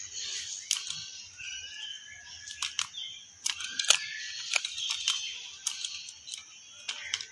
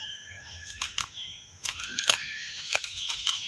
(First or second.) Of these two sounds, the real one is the first